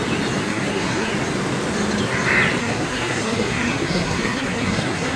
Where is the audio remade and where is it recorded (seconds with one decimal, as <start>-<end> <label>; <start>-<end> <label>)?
0.0-0.4 recorded; 0.4-1.1 remade; 1.1-2.6 recorded; 2.6-5.2 remade